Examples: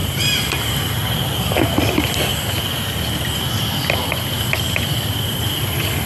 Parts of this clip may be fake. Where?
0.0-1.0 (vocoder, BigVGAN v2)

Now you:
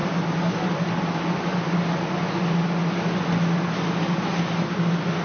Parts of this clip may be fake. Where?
none

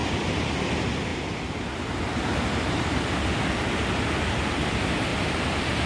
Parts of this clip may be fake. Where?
1.1-3.1 (vocoder, BigVGAN v2); 5.1-5.9

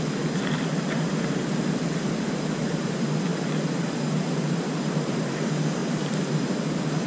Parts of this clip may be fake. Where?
3.3-5.1 (vocoder, BigVGAN v2); 5.8-6.3

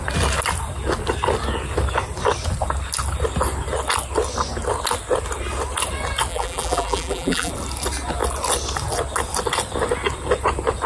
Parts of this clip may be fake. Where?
6.3-7.5 (vocoder, BigVGAN v2)

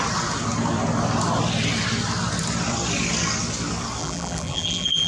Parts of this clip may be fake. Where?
4.0-5.1 (vocoder, BigVGAN v2)